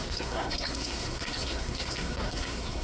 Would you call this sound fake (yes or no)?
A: yes